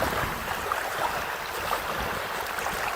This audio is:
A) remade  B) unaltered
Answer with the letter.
B